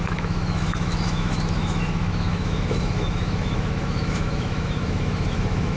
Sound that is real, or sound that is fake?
fake